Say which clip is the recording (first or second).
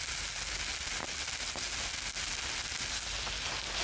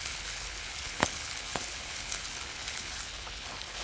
first